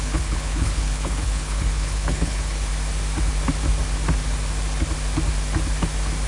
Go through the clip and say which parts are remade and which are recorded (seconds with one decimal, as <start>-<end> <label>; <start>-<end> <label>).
0.0-2.7 remade; 2.7-6.3 recorded